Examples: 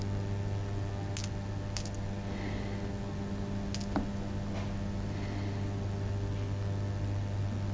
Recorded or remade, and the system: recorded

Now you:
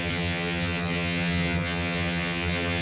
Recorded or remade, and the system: remade, vocoder, HiFi-GAN